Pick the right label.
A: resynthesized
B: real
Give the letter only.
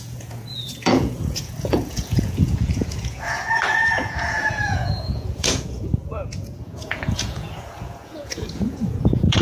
A